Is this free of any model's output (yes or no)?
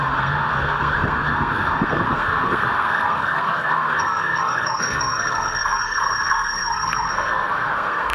no